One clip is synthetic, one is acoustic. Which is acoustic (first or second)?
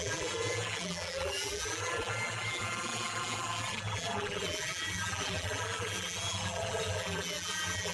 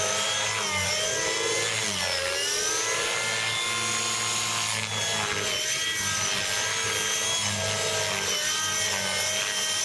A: second